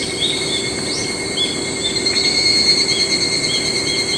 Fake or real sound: real